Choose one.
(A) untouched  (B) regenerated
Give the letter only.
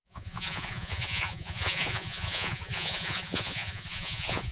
B